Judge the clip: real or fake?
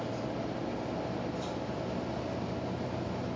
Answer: real